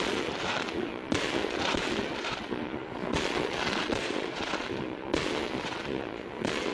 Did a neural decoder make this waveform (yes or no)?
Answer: yes